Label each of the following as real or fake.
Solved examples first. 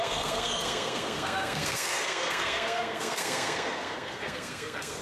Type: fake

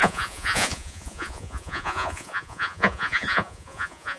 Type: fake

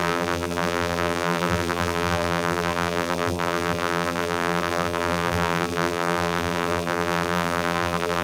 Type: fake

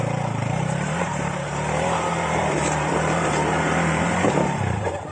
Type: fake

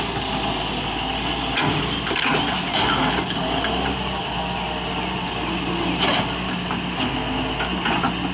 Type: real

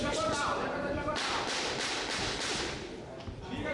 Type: real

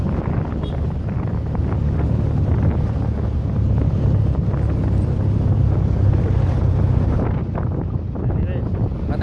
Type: real